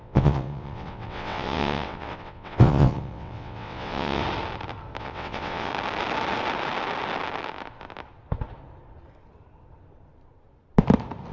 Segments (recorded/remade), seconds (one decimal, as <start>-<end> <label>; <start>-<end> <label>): 0.0-4.2 remade; 4.2-5.0 recorded; 5.0-5.7 remade; 5.7-11.3 recorded

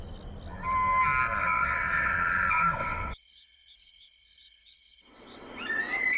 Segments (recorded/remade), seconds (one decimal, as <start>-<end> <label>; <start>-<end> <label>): 0.0-1.4 recorded; 1.4-2.1 remade; 2.1-2.8 recorded; 2.8-6.2 remade

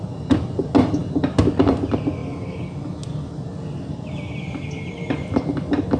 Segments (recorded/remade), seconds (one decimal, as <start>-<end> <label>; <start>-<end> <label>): 0.0-6.0 recorded

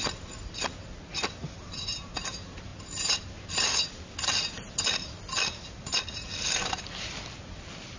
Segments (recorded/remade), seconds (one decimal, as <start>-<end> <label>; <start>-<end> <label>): 0.0-8.0 recorded

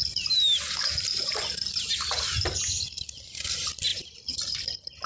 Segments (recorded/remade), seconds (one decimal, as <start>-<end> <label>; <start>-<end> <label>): 0.0-5.1 recorded

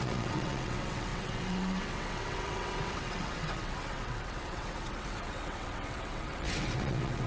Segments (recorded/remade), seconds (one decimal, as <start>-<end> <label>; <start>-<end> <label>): 0.0-7.3 remade